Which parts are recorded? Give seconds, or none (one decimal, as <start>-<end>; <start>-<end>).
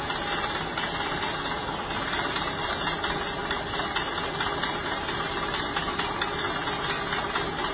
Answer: 0.0-7.7